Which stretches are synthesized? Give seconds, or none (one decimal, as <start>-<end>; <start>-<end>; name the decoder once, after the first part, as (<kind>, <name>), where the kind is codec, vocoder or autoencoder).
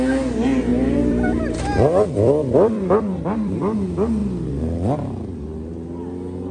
0.7-3.6 (vocoder, BigVGAN v2)